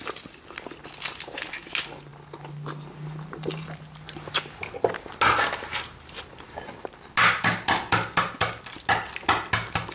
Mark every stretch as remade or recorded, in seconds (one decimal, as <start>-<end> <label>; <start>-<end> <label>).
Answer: 0.0-9.9 recorded